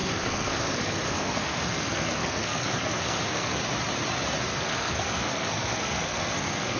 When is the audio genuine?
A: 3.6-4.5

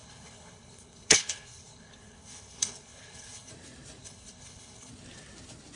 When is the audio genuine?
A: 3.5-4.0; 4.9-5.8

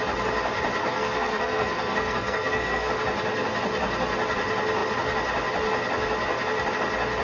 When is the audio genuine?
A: 0.0-0.8; 2.9-7.2